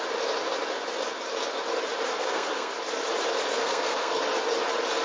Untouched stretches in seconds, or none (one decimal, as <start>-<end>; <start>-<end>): 0.0-2.1; 2.7-3.6; 4.2-5.0